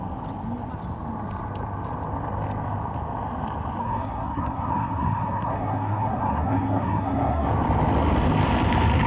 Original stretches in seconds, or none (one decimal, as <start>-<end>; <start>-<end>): 0.0-3.8; 7.5-9.1